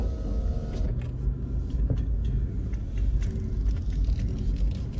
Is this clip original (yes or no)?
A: yes